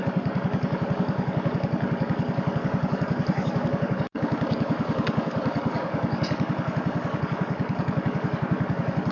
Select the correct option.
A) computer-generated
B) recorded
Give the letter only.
A